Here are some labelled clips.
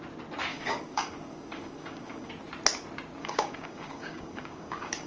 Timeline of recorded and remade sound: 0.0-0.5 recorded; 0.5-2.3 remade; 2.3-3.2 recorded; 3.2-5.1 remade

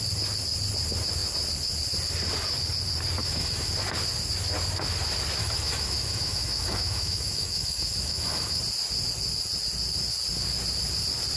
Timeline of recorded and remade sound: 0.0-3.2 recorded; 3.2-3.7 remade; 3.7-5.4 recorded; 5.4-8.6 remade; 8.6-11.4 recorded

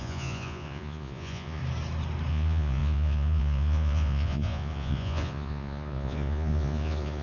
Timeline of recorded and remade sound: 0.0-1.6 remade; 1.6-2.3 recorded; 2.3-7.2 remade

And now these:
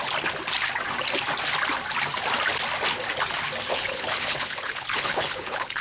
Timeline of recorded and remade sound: 0.0-3.7 recorded; 3.7-5.8 remade